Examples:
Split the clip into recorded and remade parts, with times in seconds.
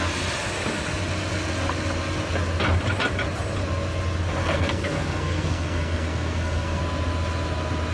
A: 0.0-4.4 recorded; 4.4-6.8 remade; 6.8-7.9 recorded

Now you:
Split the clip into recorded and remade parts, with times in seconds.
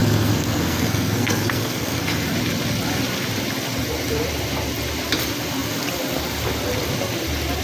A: 0.0-2.3 remade; 2.3-7.6 recorded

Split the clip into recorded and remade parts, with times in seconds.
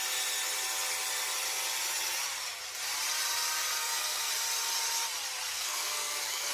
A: 0.0-3.8 recorded; 3.8-4.3 remade; 4.3-5.5 recorded; 5.5-6.5 remade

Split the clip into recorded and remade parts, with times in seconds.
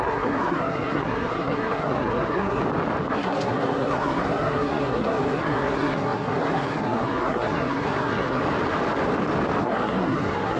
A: 0.0-2.6 remade; 2.6-3.1 recorded; 3.1-8.4 remade; 8.4-9.6 recorded; 9.6-10.6 remade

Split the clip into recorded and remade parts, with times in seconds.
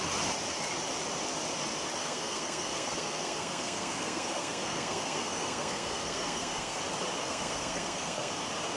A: 0.0-2.0 recorded; 2.0-6.8 remade; 6.8-7.2 recorded; 7.2-8.3 remade; 8.3-8.8 recorded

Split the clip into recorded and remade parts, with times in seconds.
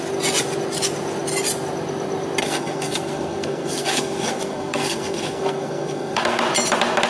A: 0.0-2.4 recorded; 2.4-6.4 remade; 6.4-7.1 recorded